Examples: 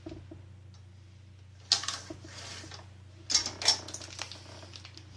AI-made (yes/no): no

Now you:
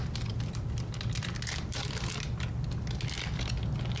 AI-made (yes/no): no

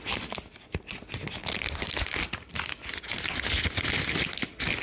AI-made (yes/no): no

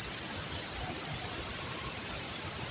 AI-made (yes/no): yes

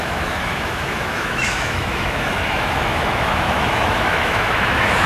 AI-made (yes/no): yes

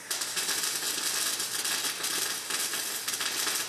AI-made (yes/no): no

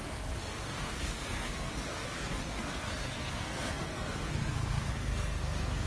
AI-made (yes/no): yes